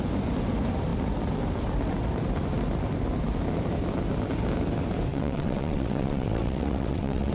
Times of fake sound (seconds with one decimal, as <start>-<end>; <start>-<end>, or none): 5.1-7.3

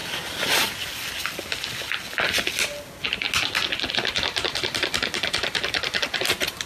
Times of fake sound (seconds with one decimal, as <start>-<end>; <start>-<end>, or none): 3.9-6.7

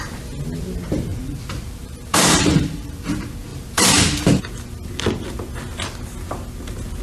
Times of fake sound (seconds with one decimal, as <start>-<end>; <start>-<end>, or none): 1.1-3.0; 3.5-4.4

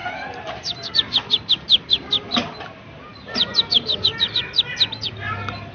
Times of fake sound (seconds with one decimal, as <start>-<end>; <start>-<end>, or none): none

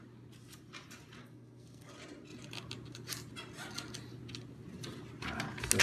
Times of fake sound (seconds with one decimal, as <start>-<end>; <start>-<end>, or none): 1.2-1.9